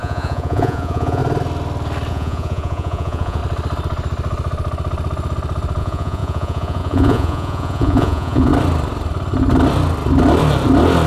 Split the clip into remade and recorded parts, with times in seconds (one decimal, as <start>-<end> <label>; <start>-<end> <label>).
0.0-1.2 remade; 1.2-2.1 recorded; 2.1-3.4 remade; 3.4-5.8 recorded; 5.8-8.5 remade; 8.5-11.1 recorded